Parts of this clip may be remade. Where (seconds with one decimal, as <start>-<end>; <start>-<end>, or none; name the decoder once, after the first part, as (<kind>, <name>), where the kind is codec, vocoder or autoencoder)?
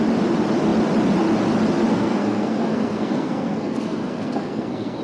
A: 1.9-5.0 (codec, SNAC)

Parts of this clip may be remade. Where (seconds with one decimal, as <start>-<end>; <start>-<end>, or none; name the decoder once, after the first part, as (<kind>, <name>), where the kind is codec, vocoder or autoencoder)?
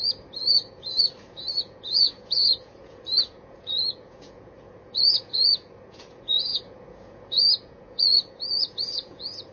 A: 0.0-9.5 (vocoder, Vocos)